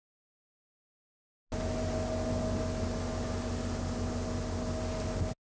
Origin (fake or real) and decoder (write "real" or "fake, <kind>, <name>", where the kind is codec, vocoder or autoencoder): real